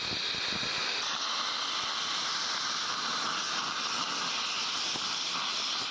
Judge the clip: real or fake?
real